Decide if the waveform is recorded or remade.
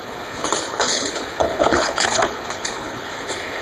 remade